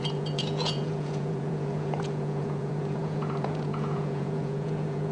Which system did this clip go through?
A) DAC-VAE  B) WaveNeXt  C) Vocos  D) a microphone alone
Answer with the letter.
C